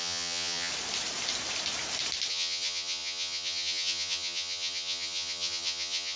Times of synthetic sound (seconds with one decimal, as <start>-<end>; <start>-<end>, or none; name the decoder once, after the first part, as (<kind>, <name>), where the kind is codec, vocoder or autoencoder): 0.0-0.7 (vocoder, HiFi-GAN); 2.3-6.2